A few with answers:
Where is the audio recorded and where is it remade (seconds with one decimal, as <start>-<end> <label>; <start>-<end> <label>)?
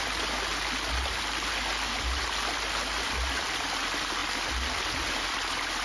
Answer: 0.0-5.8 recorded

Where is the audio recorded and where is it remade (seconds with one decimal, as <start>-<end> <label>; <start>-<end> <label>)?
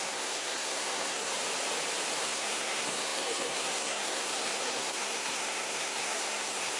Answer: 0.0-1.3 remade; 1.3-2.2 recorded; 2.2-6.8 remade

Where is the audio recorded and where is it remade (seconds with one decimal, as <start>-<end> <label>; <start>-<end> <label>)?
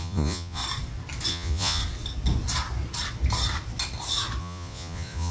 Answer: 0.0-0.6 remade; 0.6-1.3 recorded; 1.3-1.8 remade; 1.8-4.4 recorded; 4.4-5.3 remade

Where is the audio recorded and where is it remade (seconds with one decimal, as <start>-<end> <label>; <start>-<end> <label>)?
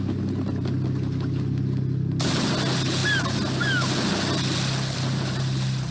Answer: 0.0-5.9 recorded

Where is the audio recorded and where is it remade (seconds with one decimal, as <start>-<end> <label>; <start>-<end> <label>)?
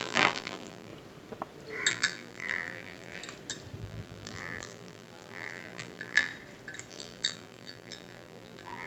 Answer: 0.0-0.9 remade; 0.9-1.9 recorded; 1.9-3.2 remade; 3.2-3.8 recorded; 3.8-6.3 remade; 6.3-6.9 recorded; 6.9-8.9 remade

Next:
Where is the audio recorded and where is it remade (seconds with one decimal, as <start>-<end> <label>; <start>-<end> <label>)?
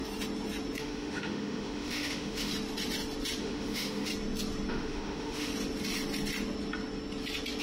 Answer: 0.0-0.8 recorded; 0.8-2.5 remade; 2.5-3.4 recorded; 3.4-4.1 remade; 4.1-4.7 recorded; 4.7-5.5 remade; 5.5-7.6 recorded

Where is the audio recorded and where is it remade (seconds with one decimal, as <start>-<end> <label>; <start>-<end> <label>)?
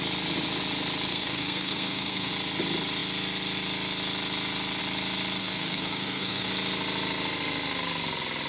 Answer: 0.0-1.1 recorded; 1.1-2.3 remade; 2.3-5.4 recorded; 5.4-6.5 remade; 6.5-8.5 recorded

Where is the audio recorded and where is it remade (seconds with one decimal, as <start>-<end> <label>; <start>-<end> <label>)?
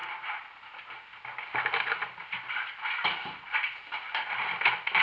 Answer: 0.0-5.0 recorded